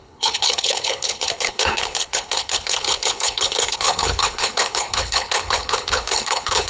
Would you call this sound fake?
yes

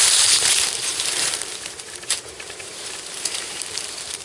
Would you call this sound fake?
yes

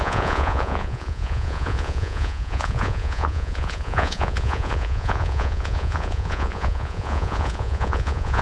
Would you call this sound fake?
yes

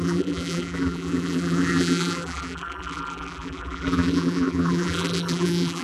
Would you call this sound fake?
yes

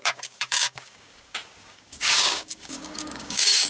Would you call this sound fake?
yes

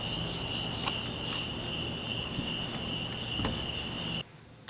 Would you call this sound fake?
no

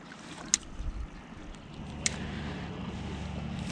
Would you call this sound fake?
no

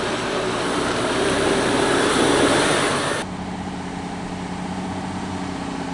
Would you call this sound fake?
no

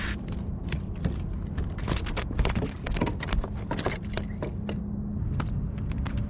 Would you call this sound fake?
no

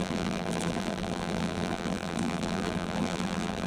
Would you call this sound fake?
yes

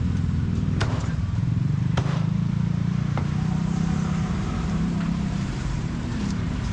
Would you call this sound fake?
yes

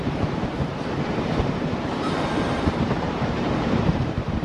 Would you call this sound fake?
yes